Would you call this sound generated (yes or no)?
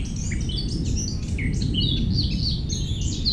no